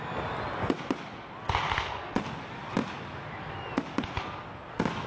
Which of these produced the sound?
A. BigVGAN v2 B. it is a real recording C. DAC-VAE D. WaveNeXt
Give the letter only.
B